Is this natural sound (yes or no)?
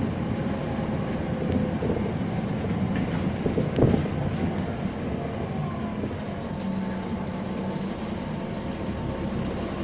yes